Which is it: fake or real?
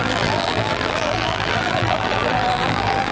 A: fake